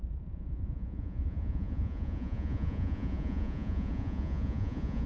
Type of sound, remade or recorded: remade